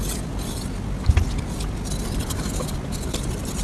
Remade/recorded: recorded